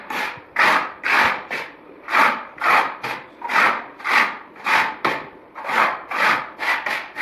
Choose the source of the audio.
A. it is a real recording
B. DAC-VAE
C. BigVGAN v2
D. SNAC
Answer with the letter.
A